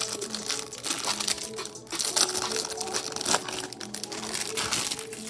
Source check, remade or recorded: recorded